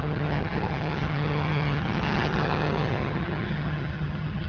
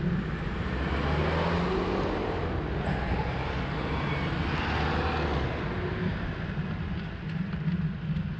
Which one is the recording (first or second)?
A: second